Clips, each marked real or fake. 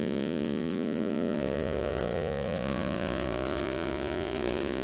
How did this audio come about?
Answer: fake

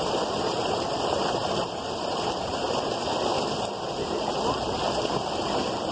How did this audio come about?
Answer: real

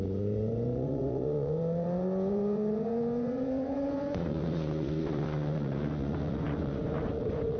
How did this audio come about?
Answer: fake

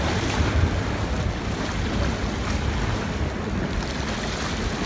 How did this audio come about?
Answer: real